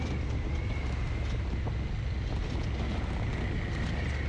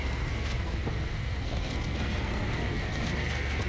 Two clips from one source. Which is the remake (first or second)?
second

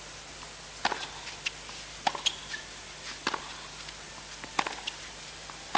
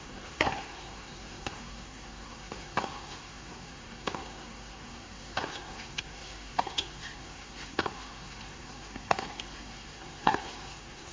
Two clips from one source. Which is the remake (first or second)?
second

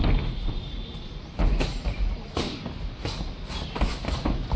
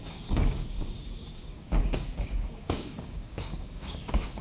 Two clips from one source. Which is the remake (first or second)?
second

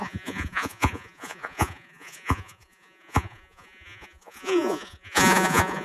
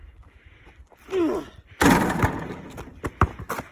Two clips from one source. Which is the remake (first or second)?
first